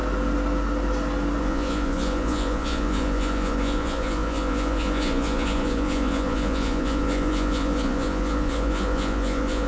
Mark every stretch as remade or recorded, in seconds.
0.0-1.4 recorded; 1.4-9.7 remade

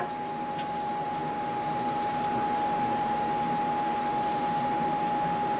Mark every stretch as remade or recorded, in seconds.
0.0-5.6 recorded

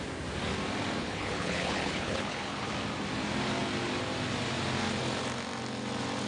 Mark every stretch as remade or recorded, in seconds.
0.0-1.0 recorded; 1.0-2.7 remade; 2.7-6.3 recorded

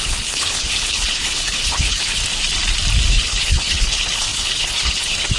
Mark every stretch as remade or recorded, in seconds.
0.0-2.2 remade; 2.2-3.1 recorded; 3.1-5.4 remade

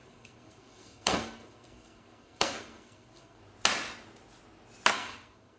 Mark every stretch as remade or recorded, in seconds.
0.0-3.4 remade; 3.4-4.9 recorded; 4.9-5.6 remade

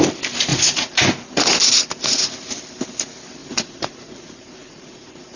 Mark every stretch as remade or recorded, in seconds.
0.0-0.5 recorded; 0.5-1.0 remade; 1.0-3.4 recorded; 3.4-5.4 remade